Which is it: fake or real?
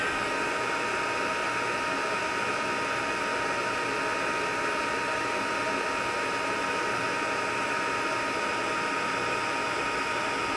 real